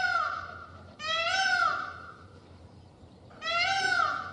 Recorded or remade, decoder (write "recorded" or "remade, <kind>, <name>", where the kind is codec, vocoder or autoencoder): remade, vocoder, BigVGAN v2